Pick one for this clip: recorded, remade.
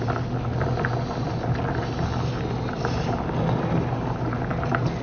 recorded